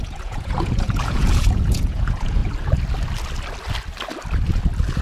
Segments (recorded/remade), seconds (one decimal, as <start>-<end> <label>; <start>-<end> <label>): 0.0-2.4 remade; 2.4-5.0 recorded